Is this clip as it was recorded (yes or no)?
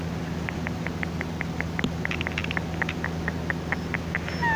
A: yes